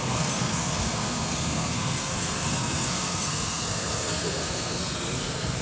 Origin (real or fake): fake